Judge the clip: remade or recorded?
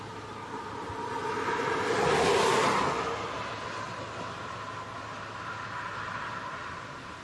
recorded